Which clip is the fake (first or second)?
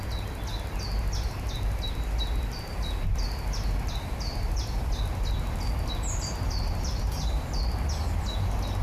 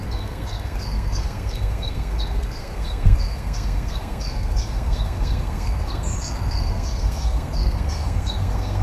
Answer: second